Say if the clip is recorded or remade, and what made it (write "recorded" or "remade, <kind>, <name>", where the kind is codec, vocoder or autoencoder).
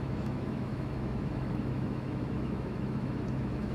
remade, autoencoder, DAC-VAE